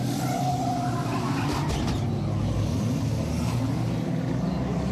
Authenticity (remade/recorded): recorded